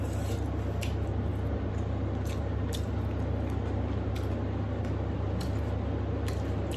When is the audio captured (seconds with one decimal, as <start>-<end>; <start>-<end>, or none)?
0.0-6.8